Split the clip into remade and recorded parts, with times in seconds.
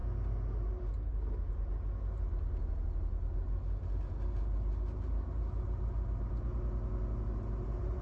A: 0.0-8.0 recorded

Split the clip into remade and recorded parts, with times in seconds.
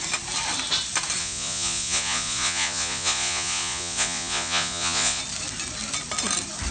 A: 0.0-1.2 recorded; 1.2-5.2 remade; 5.2-6.7 recorded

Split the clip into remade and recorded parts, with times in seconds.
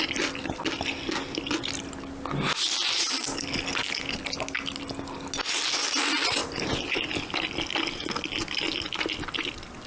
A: 0.0-9.9 recorded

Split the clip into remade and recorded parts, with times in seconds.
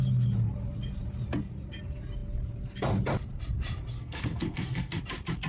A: 0.0-3.9 recorded; 3.9-5.0 remade; 5.0-5.5 recorded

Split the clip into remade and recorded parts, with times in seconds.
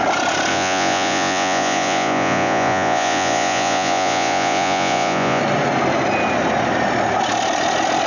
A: 0.0-0.5 recorded; 0.5-5.4 remade; 5.4-8.1 recorded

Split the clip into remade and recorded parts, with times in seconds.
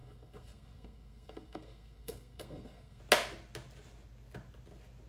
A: 0.0-3.0 remade; 3.0-5.1 recorded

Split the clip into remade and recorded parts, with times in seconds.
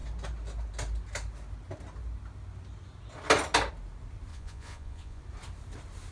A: 0.0-4.3 recorded; 4.3-5.2 remade; 5.2-6.1 recorded